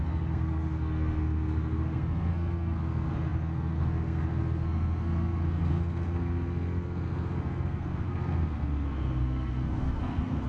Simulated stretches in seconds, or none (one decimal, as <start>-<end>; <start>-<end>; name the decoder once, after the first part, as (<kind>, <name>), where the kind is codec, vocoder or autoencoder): 0.0-10.5 (codec, SNAC)